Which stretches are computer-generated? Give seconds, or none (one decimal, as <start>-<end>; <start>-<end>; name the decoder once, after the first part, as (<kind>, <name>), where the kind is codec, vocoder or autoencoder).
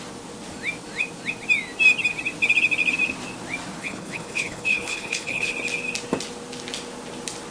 3.8-5.5 (codec, HILCodec)